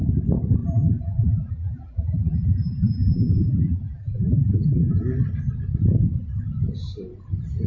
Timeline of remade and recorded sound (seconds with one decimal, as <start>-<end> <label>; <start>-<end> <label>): 0.0-0.6 recorded; 0.6-5.0 remade; 5.0-7.7 recorded